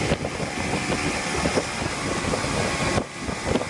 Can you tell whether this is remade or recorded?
recorded